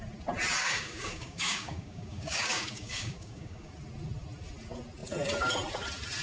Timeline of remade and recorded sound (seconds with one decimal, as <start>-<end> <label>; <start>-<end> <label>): 0.0-0.6 recorded; 0.6-3.7 remade; 3.7-6.2 recorded